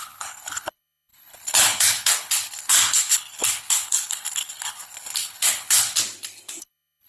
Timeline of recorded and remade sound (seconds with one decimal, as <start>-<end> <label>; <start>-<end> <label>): 0.0-6.0 remade; 6.0-6.6 recorded; 6.6-7.1 remade